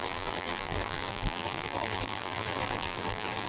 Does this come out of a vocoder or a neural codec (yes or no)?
yes